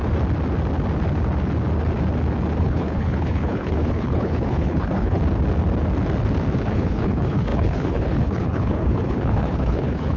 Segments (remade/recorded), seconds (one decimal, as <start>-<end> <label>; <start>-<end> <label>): 0.0-2.6 recorded; 2.6-5.2 remade; 5.2-6.6 recorded; 6.6-10.2 remade